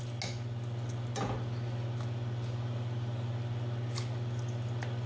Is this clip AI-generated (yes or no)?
no